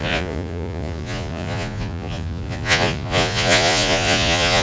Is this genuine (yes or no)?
no